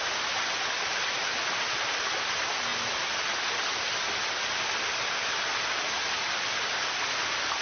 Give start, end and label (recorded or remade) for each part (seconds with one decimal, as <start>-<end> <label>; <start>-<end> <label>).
0.0-7.6 recorded